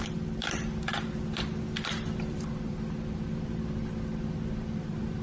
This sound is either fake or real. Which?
fake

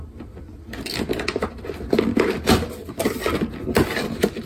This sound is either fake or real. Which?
real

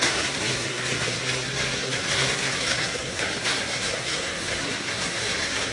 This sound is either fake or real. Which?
fake